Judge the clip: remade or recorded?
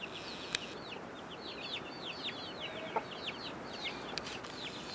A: recorded